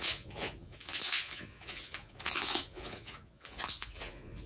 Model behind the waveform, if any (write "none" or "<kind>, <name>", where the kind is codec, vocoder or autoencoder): vocoder, Vocos